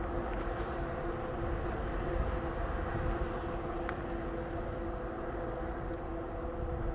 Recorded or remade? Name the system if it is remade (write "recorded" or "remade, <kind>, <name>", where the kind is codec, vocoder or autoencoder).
recorded